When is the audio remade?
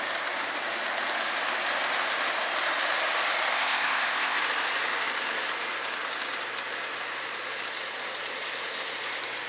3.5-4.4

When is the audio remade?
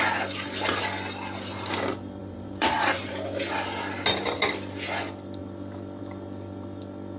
2.2-3.1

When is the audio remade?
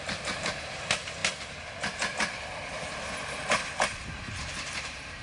0.0-1.2; 4.3-5.2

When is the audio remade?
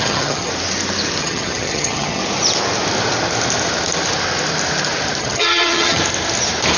0.0-0.5; 1.2-2.2; 5.2-6.0